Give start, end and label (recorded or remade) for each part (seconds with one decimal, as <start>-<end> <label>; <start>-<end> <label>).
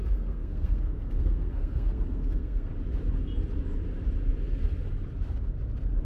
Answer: 0.0-2.7 remade; 2.7-6.0 recorded